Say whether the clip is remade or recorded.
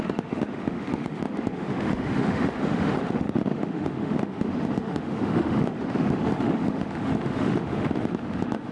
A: remade